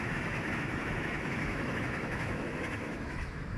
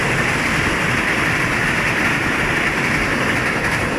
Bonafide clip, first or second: second